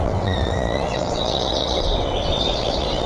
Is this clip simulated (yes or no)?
yes